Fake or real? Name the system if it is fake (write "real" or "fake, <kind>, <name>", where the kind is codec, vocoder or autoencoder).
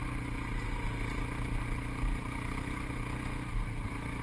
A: real